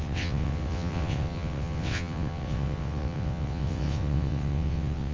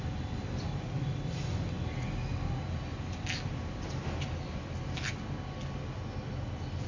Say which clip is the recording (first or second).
second